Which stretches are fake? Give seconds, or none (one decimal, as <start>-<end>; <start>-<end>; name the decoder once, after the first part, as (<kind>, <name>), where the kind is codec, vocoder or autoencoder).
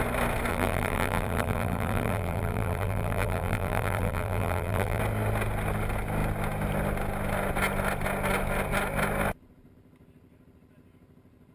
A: 0.5-5.0 (vocoder, BigVGAN v2)